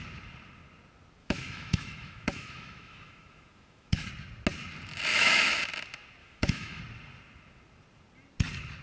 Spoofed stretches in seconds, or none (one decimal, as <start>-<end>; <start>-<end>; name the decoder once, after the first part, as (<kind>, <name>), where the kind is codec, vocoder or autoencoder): 1.2-4.1 (autoencoder, DAC-VAE); 5.1-5.6; 6.2-6.8